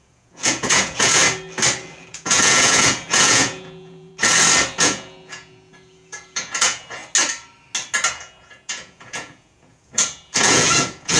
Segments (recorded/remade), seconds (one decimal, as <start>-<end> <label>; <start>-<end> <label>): 0.0-1.2 remade; 1.2-2.0 recorded; 2.0-4.1 remade; 4.1-4.8 recorded; 4.8-7.0 remade; 7.0-8.1 recorded; 8.1-11.2 remade